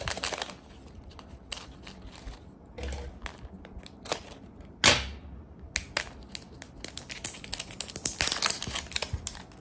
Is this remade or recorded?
recorded